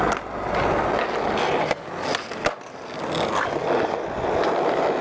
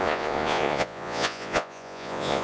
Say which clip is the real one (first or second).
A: first